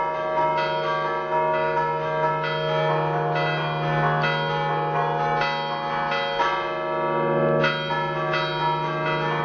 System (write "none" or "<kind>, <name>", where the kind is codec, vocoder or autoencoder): none